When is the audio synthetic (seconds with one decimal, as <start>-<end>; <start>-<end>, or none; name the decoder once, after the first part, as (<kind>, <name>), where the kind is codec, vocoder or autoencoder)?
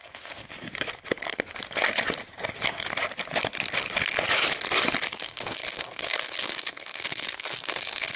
0.0-0.5 (codec, SNAC); 5.2-8.2